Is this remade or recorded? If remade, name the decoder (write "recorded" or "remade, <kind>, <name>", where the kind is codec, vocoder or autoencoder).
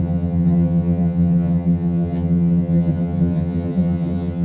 remade, vocoder, HiFi-GAN